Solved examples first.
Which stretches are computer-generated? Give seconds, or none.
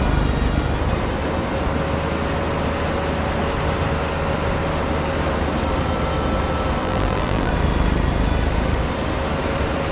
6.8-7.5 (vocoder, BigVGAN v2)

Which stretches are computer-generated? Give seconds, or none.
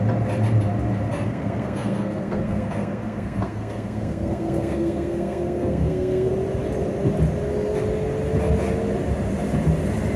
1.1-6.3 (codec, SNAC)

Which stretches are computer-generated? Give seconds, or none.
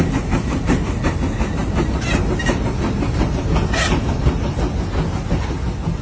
none